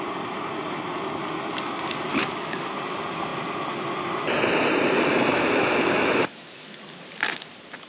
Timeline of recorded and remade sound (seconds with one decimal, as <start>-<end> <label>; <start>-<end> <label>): 0.0-2.1 recorded; 2.1-2.7 remade; 2.7-5.3 recorded; 5.3-6.8 remade; 6.8-7.9 recorded